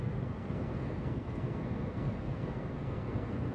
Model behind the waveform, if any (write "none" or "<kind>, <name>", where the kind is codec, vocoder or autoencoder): codec, SNAC